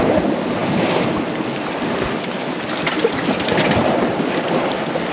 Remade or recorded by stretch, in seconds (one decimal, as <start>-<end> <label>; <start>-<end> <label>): 0.0-5.1 recorded

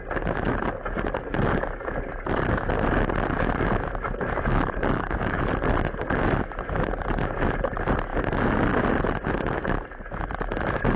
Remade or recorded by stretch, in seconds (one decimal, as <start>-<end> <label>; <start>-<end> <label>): 0.0-4.5 recorded; 4.5-5.4 remade; 5.4-11.0 recorded

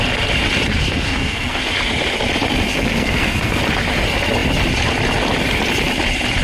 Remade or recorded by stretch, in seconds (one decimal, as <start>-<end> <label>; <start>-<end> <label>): 0.0-0.7 recorded; 0.7-1.6 remade; 1.6-2.7 recorded; 2.7-3.6 remade; 3.6-6.4 recorded

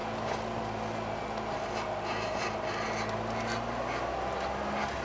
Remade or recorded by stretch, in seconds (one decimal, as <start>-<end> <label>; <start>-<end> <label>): 0.0-5.0 recorded

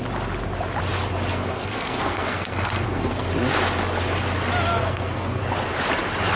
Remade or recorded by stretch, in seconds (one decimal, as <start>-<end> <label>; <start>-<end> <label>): 0.0-1.3 recorded; 1.3-3.3 remade; 3.3-4.7 recorded; 4.7-5.4 remade; 5.4-6.4 recorded

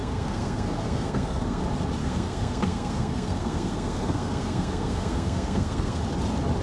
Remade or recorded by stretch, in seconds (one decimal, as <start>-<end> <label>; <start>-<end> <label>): 0.0-1.6 remade; 1.6-2.0 recorded; 2.0-6.0 remade; 6.0-6.6 recorded

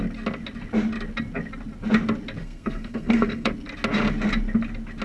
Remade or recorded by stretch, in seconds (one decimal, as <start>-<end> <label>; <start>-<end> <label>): 0.0-2.4 recorded; 2.4-3.5 remade; 3.5-5.0 recorded